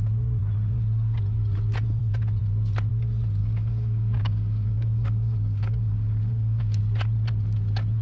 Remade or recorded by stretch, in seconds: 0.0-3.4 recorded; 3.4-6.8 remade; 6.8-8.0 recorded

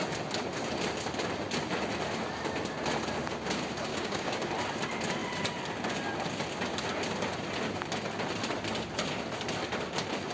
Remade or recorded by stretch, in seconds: 0.0-3.9 recorded; 3.9-4.5 remade; 4.5-10.3 recorded

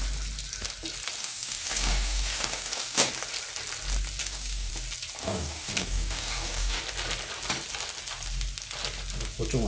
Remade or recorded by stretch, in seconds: 0.0-1.2 recorded; 1.2-3.1 remade; 3.1-4.2 recorded; 4.2-4.7 remade; 4.7-5.2 recorded; 5.2-6.8 remade; 6.8-9.7 recorded

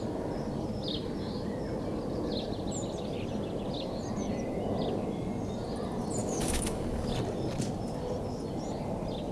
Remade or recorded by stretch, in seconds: 0.0-6.2 recorded; 6.2-7.1 remade; 7.1-9.3 recorded

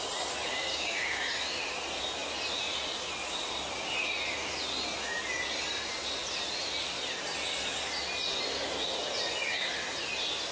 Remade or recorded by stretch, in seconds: 0.0-0.7 recorded; 0.7-1.3 remade; 1.3-10.5 recorded

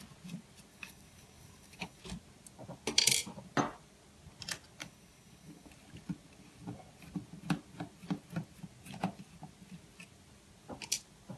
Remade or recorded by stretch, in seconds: 0.0-0.7 recorded; 0.7-2.0 remade; 2.0-4.8 recorded; 4.8-5.7 remade; 5.7-11.4 recorded

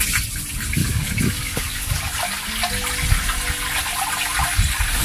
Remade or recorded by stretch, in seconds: 0.0-0.8 recorded; 0.8-1.9 remade; 1.9-5.0 recorded